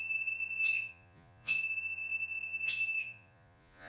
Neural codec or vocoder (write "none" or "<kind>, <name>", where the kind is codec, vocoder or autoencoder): vocoder, Vocos